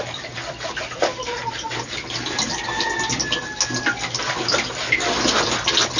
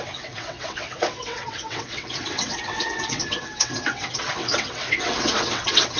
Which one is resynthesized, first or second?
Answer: second